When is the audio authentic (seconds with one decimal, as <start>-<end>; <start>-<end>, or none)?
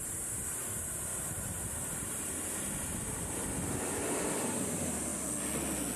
5.1-6.0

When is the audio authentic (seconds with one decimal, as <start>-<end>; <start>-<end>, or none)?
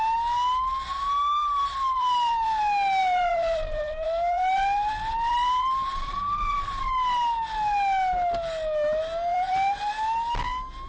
0.0-1.4; 2.6-3.0; 6.8-9.3; 9.9-10.9